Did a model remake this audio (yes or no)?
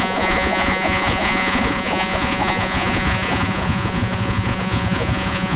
yes